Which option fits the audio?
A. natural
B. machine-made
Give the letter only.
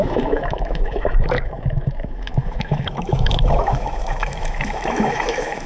B